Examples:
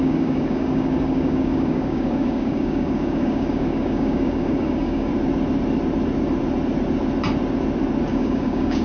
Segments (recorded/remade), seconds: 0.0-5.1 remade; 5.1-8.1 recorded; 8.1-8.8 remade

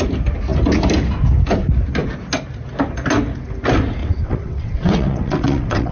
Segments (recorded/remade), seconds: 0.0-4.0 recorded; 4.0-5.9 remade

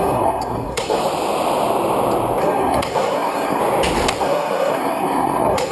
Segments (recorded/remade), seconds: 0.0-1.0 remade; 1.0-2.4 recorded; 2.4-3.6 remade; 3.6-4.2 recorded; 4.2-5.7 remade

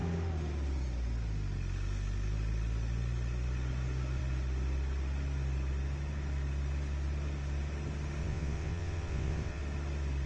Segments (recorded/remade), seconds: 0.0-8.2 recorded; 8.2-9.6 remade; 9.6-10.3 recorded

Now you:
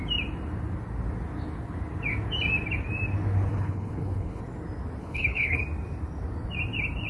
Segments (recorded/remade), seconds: 0.0-3.5 recorded; 3.5-4.4 remade; 4.4-5.0 recorded; 5.0-5.6 remade; 5.6-7.1 recorded

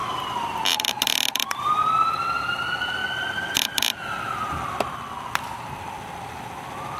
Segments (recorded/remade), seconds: 0.0-0.9 remade; 0.9-7.0 recorded